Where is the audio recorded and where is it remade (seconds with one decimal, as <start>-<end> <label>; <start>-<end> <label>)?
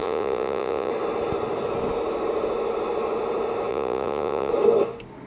0.0-0.9 remade; 0.9-3.7 recorded; 3.7-4.5 remade; 4.5-5.3 recorded